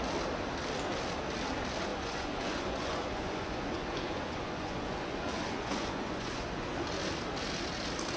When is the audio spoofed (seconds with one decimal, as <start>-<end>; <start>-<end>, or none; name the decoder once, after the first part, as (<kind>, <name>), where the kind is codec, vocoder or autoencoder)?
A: 1.9-6.7 (vocoder, Vocos)

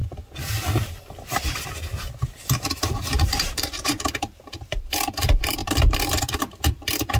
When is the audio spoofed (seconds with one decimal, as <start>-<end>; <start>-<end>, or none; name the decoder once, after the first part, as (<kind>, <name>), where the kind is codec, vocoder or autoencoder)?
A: 2.7-7.2 (vocoder, BigVGAN v2)

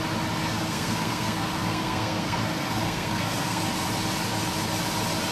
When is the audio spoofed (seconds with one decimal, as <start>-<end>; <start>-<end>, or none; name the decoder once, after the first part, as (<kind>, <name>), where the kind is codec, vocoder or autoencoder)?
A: 0.4-3.6 (codec, SNAC)

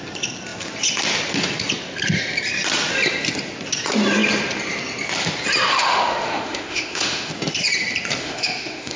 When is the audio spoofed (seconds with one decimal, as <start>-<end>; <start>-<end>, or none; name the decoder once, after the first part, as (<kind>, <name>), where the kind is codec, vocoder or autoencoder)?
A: 5.7-7.3 (autoencoder, DAC-VAE); 8.2-9.0

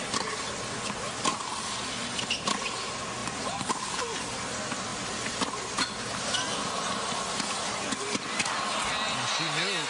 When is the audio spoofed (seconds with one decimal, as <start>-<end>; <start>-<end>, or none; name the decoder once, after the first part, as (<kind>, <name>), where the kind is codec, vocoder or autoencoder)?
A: 1.3-2.0 (vocoder, BigVGAN v2); 3.2-4.0

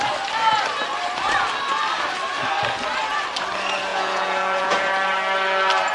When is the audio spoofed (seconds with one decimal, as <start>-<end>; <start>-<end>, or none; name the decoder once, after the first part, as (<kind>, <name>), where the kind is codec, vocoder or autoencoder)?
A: 3.9-4.9 (vocoder, Vocos)

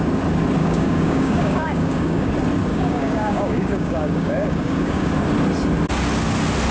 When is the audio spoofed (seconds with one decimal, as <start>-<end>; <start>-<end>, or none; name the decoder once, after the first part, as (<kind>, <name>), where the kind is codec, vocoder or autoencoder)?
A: 0.6-2.3 (codec, DAC); 2.7-5.1